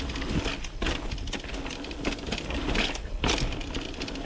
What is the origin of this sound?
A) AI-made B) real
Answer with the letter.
B